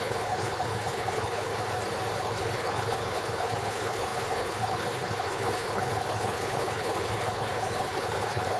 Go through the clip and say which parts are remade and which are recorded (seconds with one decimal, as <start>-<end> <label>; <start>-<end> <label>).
0.0-1.5 remade; 1.5-2.2 recorded; 2.2-8.6 remade

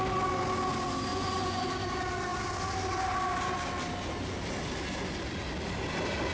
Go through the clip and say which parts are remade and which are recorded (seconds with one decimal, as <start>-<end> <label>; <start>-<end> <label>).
0.0-1.1 recorded; 1.1-1.7 remade; 1.7-6.3 recorded

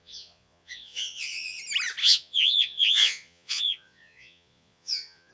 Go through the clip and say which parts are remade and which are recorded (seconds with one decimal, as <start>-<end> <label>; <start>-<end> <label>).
0.0-1.6 remade; 1.6-2.0 recorded; 2.0-5.3 remade

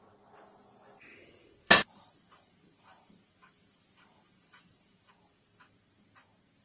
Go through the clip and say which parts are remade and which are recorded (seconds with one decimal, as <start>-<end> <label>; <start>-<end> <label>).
0.0-1.1 recorded; 1.1-5.1 remade; 5.1-6.6 recorded

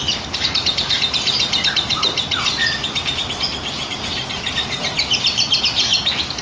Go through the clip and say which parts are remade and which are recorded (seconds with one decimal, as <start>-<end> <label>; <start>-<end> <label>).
0.0-6.4 recorded

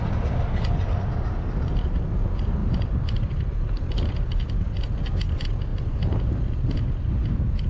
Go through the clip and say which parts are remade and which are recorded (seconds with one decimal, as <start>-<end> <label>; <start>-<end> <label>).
0.0-2.6 recorded; 2.6-4.5 remade; 4.5-7.7 recorded

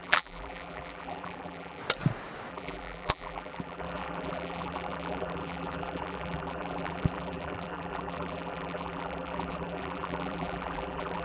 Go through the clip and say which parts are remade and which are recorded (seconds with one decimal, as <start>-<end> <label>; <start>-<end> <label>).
0.0-1.8 remade; 1.8-2.5 recorded; 2.5-11.2 remade